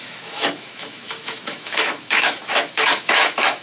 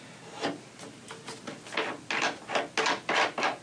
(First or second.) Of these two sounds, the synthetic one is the first